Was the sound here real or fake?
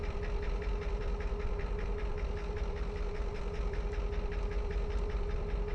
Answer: fake